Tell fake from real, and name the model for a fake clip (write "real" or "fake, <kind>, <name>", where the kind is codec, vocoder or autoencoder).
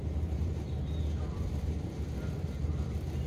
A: fake, vocoder, BigVGAN v2